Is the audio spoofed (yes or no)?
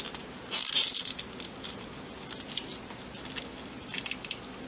no